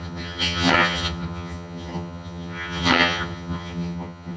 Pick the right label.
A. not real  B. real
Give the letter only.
A